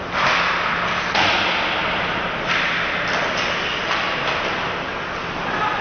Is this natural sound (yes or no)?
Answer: yes